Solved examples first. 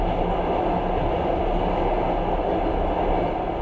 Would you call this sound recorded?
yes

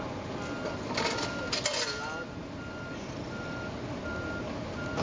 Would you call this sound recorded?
yes